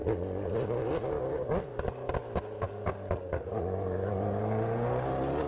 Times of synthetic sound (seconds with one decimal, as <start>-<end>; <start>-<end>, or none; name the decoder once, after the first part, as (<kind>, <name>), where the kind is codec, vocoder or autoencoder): none